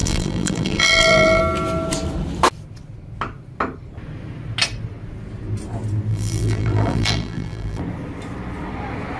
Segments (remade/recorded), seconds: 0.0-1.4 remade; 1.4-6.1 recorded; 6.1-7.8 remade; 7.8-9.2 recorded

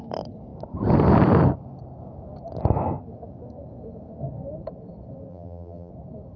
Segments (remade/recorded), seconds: 0.0-5.3 recorded; 5.3-5.9 remade; 5.9-6.4 recorded

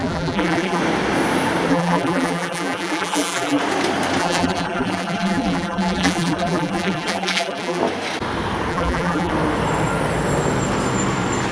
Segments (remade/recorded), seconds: 0.0-0.8 remade; 0.8-1.7 recorded; 1.7-3.6 remade; 3.6-4.2 recorded; 4.2-7.8 remade; 7.8-8.7 recorded; 8.7-9.3 remade; 9.3-11.5 recorded

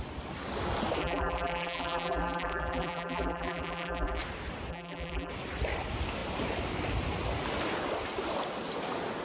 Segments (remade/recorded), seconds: 0.0-1.0 recorded; 1.0-4.2 remade; 4.2-4.7 recorded; 4.7-5.3 remade; 5.3-9.2 recorded

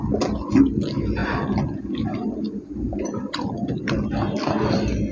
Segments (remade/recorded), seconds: 0.0-1.2 recorded; 1.2-4.1 remade; 4.1-5.1 recorded

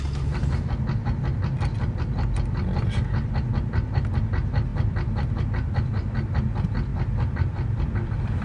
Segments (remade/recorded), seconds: 0.0-6.9 recorded; 6.9-8.4 remade